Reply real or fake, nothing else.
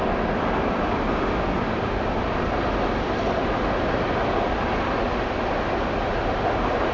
real